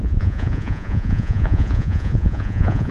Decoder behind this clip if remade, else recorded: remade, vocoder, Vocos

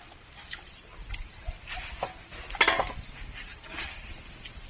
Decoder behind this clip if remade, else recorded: recorded